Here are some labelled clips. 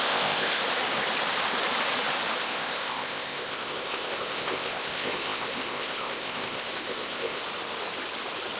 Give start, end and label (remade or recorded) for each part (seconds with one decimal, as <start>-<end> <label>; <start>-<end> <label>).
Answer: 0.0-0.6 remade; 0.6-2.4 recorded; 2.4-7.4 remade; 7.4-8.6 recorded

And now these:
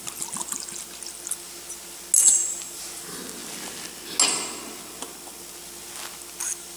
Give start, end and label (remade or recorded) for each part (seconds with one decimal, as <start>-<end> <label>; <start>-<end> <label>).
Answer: 0.0-6.8 recorded

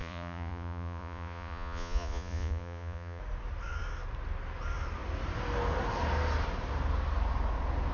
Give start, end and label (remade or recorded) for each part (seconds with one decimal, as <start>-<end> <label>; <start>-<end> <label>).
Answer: 0.0-3.2 remade; 3.2-7.9 recorded

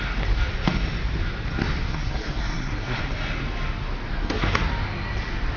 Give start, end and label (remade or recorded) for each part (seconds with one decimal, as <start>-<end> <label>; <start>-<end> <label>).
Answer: 0.0-1.9 recorded; 1.9-3.0 remade; 3.0-4.1 recorded; 4.1-4.7 remade; 4.7-5.6 recorded

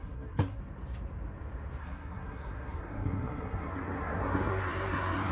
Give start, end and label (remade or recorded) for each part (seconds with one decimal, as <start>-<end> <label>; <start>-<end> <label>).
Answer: 0.0-0.6 remade; 0.6-1.8 recorded; 1.8-5.3 remade